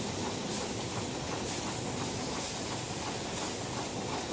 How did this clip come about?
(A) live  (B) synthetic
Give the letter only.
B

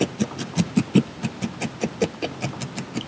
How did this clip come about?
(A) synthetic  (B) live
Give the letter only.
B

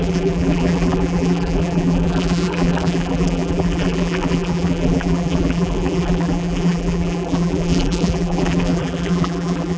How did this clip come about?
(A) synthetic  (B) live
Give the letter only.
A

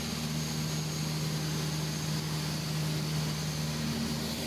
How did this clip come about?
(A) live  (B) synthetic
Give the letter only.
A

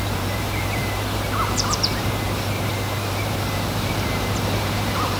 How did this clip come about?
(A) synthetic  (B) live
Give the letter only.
A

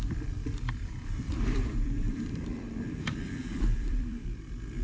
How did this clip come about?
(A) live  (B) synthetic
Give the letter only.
B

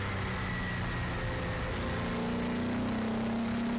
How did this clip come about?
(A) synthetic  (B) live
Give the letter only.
B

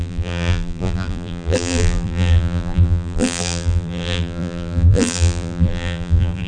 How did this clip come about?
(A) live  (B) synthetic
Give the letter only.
B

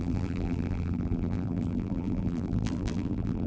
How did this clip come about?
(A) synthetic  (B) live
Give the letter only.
A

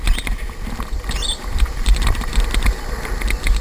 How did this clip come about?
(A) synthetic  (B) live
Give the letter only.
A